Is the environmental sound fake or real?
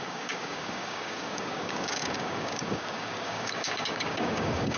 fake